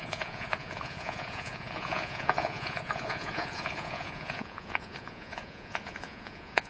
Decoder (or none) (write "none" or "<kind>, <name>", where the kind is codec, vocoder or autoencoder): vocoder, Vocos